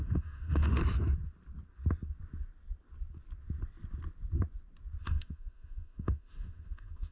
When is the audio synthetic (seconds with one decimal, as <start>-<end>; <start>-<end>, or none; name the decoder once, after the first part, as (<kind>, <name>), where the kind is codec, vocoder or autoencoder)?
0.0-0.8 (autoencoder, DAC-VAE); 5.0-7.1